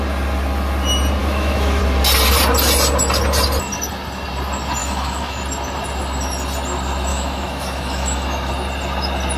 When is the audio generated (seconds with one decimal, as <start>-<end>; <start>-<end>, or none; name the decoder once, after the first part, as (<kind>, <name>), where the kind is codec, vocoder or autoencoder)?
1.2-1.8 (autoencoder, DAC-VAE); 4.8-5.4; 7.1-8.5